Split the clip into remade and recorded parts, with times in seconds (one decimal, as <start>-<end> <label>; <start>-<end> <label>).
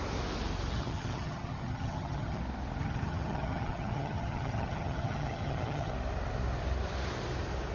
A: 0.0-0.7 recorded; 0.7-2.4 remade; 2.4-2.8 recorded; 2.8-5.9 remade; 5.9-7.7 recorded